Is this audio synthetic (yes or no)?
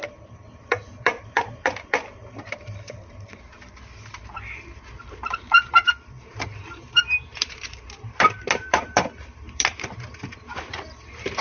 yes